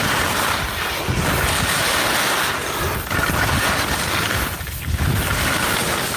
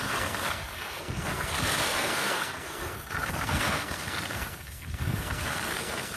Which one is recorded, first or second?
first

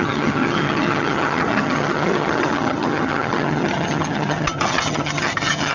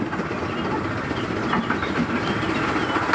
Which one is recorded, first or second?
second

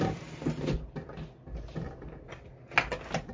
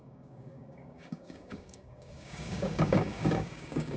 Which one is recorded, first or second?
first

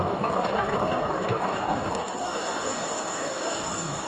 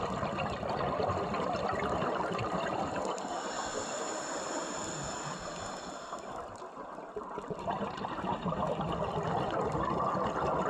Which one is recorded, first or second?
second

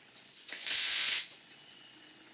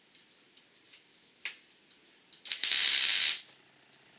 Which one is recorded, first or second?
second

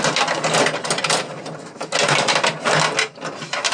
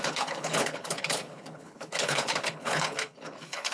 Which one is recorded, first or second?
first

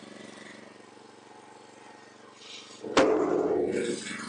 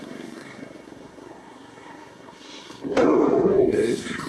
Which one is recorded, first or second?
first